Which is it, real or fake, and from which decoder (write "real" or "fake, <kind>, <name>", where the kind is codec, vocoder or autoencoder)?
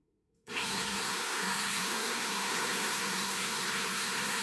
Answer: fake, codec, SNAC